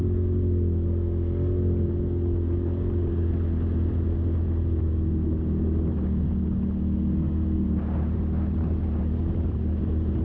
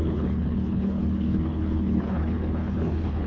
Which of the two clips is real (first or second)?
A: first